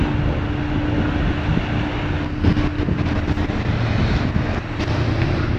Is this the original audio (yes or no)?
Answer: yes